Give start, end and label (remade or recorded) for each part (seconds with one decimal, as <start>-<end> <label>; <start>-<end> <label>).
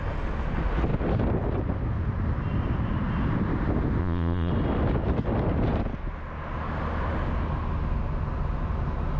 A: 0.0-4.0 recorded; 4.0-4.5 remade; 4.5-9.2 recorded